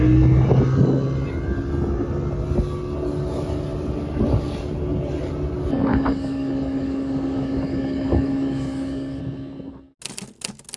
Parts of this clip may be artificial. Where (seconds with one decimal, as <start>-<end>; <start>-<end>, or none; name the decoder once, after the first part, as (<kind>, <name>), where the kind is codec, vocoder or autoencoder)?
5.9-9.2 (codec, DAC)